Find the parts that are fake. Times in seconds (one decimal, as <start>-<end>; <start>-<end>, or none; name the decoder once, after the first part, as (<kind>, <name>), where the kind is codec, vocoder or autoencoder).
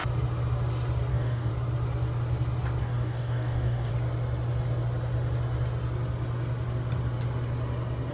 1.1-1.5 (codec, DAC); 2.8-3.9